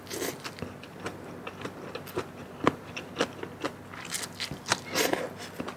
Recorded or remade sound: recorded